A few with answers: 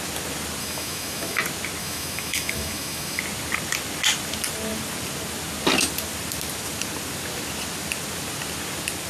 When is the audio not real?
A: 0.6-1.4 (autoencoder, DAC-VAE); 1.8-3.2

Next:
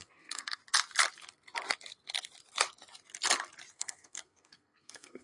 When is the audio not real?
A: 0.0-0.6 (codec, SNAC); 3.7-5.2